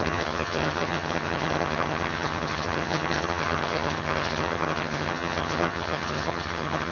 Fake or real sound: fake